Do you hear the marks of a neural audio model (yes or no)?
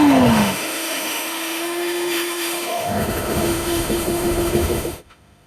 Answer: yes